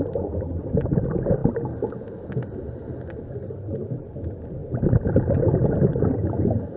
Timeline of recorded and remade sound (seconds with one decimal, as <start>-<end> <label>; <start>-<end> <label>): 0.0-6.8 recorded